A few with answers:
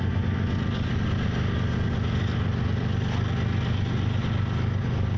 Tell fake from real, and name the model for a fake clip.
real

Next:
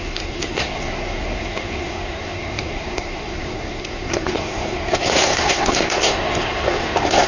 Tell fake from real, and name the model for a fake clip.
fake, codec, SNAC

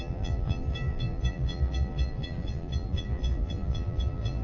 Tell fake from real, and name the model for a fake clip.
fake, vocoder, BigVGAN v2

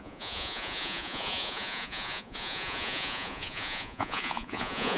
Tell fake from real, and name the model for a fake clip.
fake, vocoder, Vocos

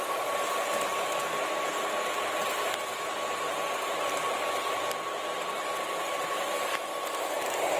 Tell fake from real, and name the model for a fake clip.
real